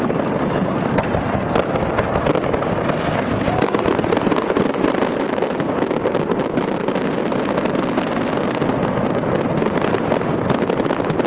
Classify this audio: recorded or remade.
recorded